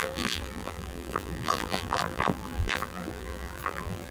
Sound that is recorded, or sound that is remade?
remade